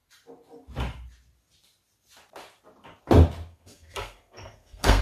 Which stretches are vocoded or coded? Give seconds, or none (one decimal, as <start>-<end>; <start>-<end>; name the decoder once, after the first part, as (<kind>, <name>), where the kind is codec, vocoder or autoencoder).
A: 3.5-5.0 (codec, SNAC)